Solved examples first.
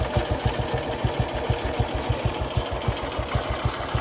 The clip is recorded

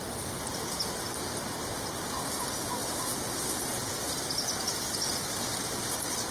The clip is recorded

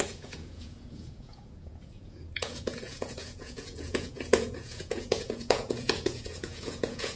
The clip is remade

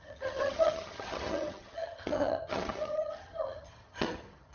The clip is remade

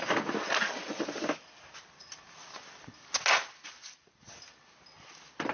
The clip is recorded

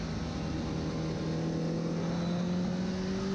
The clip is recorded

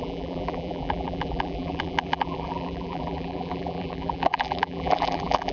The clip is remade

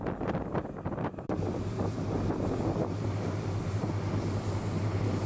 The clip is recorded